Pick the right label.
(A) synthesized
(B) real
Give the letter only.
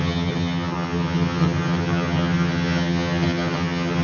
A